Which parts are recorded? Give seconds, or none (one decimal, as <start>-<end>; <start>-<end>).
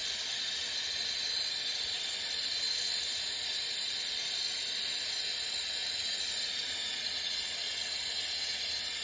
0.0-5.8; 8.3-9.0